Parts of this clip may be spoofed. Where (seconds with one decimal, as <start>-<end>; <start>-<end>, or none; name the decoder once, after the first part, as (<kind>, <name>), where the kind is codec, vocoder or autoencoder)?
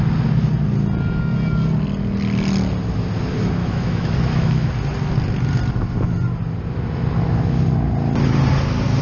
3.6-4.7 (autoencoder, DAC-VAE)